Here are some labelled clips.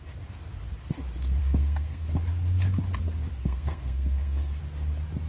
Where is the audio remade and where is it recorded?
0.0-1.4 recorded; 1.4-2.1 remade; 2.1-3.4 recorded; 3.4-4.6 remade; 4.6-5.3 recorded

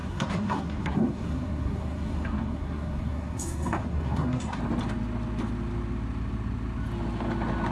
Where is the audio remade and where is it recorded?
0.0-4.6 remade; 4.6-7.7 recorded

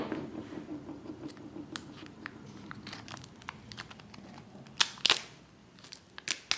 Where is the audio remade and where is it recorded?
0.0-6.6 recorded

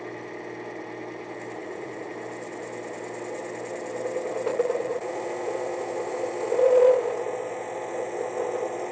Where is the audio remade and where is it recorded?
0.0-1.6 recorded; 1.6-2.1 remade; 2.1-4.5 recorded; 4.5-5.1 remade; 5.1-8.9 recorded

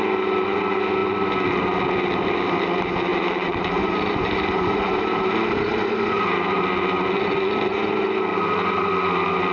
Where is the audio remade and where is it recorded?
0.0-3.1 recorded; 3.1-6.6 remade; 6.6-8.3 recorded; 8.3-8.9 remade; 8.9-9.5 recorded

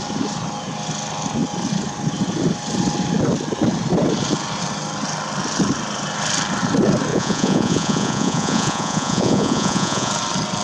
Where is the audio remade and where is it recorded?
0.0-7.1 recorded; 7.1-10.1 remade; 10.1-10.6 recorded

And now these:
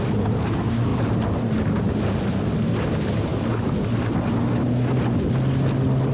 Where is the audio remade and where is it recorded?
0.0-0.9 recorded; 0.9-1.8 remade; 1.8-6.1 recorded

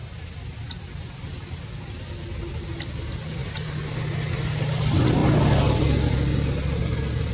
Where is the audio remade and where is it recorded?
0.0-7.3 recorded